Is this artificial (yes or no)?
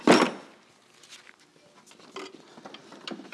no